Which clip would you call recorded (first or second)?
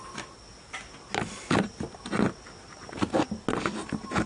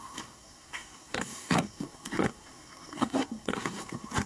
first